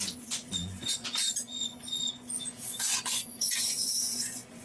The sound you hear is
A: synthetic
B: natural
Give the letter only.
A